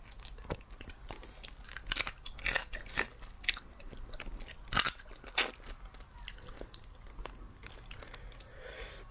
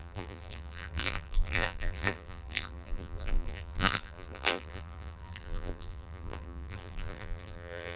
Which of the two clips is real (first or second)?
first